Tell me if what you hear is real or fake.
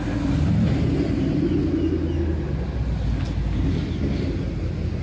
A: real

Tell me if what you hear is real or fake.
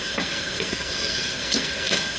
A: fake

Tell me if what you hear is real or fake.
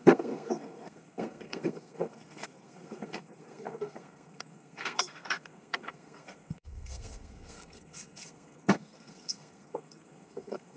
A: fake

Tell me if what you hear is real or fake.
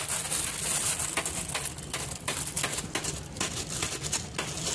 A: real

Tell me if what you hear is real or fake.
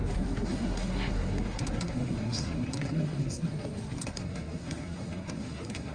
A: fake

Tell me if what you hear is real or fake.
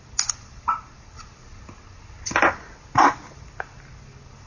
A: real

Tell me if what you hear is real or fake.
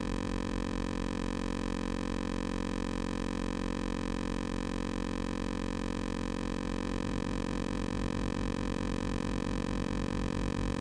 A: real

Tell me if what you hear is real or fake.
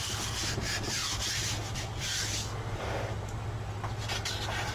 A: real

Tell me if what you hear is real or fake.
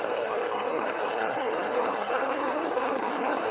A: fake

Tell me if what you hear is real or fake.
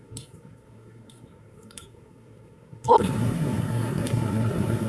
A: fake